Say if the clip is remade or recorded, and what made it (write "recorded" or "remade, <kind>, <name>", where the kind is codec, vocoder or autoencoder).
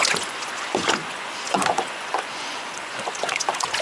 remade, vocoder, Vocos